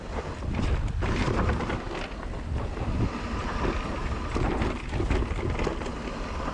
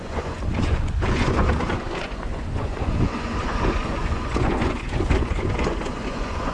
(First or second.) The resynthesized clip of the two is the second